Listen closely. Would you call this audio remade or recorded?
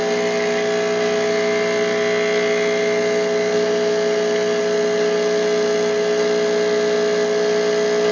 recorded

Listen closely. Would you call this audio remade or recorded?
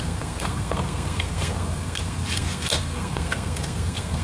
remade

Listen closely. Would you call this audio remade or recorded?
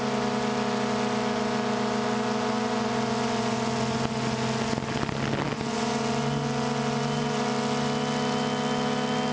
recorded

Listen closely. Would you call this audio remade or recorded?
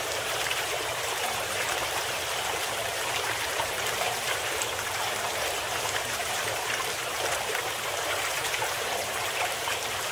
remade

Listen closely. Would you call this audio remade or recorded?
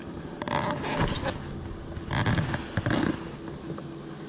recorded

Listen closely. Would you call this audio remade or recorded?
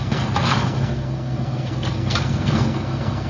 remade